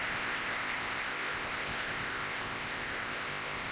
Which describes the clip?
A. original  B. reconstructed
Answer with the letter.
B